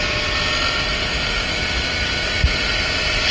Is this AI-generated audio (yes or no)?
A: no